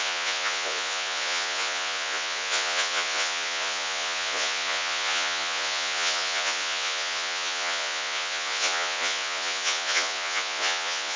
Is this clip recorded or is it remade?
remade